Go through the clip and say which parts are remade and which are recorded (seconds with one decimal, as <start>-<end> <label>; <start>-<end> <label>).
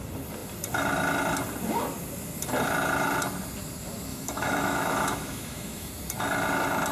0.0-4.1 recorded; 4.1-5.9 remade; 5.9-6.9 recorded